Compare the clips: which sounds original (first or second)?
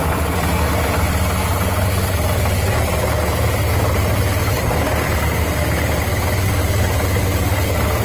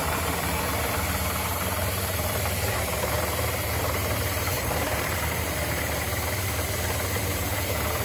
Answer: first